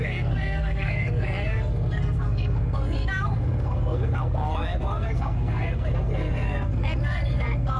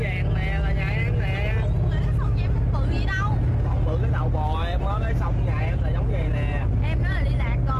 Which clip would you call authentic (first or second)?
second